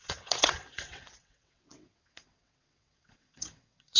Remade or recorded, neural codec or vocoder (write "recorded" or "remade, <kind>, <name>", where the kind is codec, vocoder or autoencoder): remade, vocoder, WaveNeXt